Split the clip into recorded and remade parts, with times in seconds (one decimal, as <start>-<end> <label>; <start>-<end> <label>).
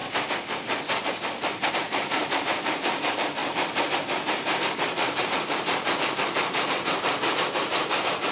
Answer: 0.0-1.7 recorded; 1.7-8.3 remade